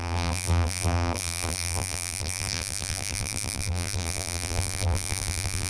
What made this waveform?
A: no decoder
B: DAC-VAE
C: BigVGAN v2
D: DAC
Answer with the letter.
C